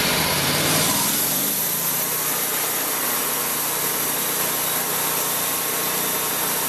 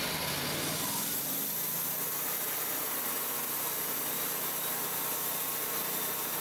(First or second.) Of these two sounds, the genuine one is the second